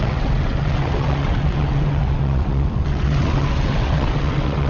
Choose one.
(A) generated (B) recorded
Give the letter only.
A